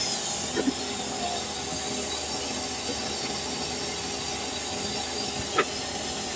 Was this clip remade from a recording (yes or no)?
no